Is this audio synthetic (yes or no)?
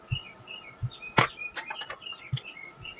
no